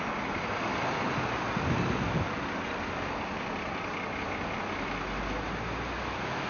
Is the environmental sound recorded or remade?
recorded